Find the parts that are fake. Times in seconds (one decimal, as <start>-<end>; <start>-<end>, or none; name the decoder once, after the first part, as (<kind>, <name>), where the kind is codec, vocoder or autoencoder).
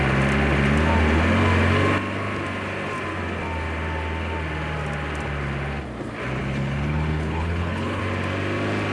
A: 6.4-8.0 (codec, HILCodec)